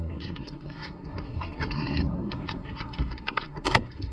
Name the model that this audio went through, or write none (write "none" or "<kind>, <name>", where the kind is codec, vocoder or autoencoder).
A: codec, SNAC